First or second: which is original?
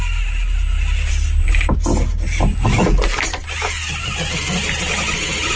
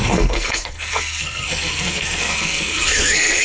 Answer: first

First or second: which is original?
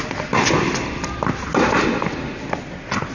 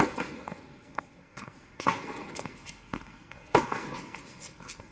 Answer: first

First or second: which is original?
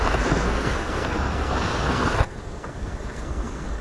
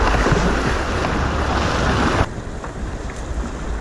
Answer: second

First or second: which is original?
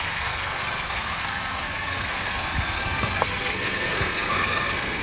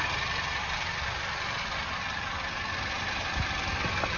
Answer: second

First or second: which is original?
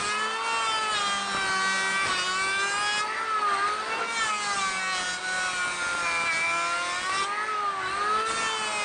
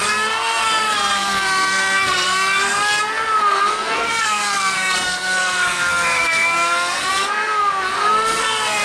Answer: first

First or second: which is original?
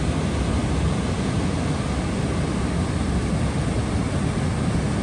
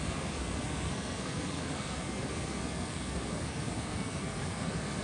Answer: first